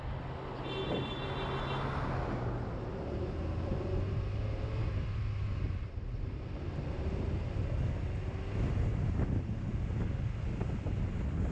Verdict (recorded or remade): recorded